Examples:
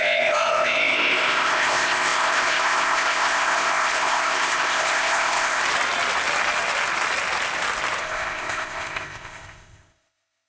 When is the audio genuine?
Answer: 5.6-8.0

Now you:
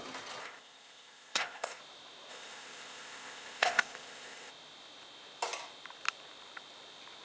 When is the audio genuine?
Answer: 0.0-0.4; 1.8-2.3; 4.5-7.2

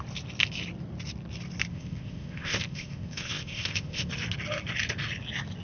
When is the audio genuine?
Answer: 0.0-1.7; 4.1-5.6

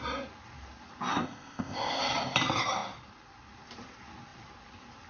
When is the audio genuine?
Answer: 0.0-1.1; 2.0-5.1

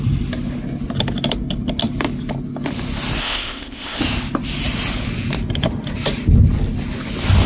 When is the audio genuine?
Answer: 0.0-3.2; 4.0-7.5